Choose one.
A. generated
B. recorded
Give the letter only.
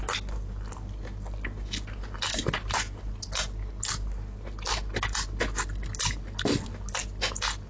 B